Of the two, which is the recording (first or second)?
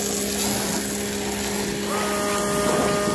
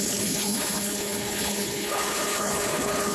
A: first